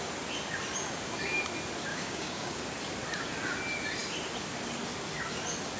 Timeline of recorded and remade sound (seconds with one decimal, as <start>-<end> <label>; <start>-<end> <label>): 0.0-1.9 recorded; 1.9-2.6 remade; 2.6-5.8 recorded

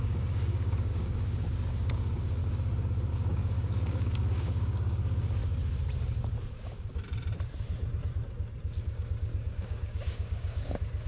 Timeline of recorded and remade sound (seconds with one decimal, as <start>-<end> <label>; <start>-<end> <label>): 0.0-2.4 remade; 2.4-3.1 recorded; 3.1-5.4 remade; 5.4-8.8 recorded; 8.8-11.1 remade

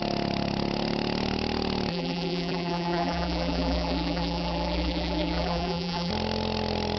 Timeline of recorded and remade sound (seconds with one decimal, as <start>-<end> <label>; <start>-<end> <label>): 0.0-1.9 recorded; 1.9-6.1 remade; 6.1-7.0 recorded

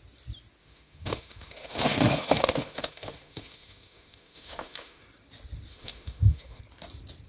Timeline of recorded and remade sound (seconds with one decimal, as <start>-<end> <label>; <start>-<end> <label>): 0.0-0.6 recorded; 0.6-5.0 remade; 5.0-5.7 recorded; 5.7-6.6 remade; 6.6-7.3 recorded

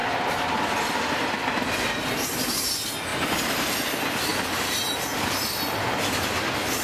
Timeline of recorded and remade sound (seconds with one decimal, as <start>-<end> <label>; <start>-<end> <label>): 0.0-3.1 recorded; 3.1-3.7 remade; 3.7-4.3 recorded; 4.3-4.8 remade; 4.8-6.8 recorded

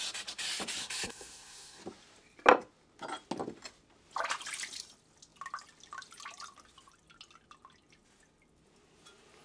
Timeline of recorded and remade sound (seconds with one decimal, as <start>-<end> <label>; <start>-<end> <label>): 0.0-0.8 recorded; 0.8-1.8 remade; 1.8-9.4 recorded

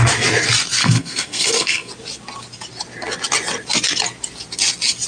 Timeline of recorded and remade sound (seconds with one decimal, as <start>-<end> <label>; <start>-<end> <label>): 0.0-0.8 recorded; 0.8-1.9 remade; 1.9-5.1 recorded